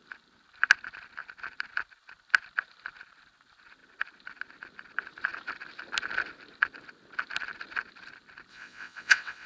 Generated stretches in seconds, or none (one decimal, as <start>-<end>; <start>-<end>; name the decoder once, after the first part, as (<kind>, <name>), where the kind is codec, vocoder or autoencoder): 8.5-9.5 (vocoder, WaveNeXt)